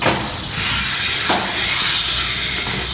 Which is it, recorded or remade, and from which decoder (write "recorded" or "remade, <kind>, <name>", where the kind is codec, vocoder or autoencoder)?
recorded